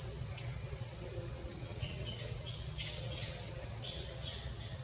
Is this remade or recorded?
remade